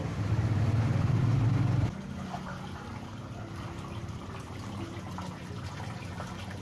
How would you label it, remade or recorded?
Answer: recorded